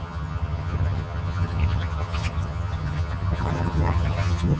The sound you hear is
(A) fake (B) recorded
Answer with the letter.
A